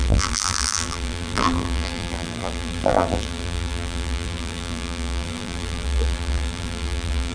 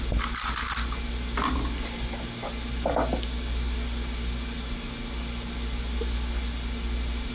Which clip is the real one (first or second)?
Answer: second